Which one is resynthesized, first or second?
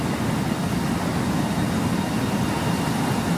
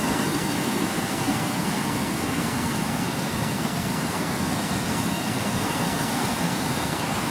second